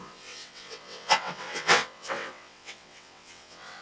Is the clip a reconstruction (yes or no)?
yes